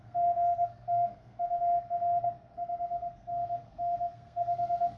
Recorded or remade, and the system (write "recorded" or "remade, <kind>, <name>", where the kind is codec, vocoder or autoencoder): remade, codec, SNAC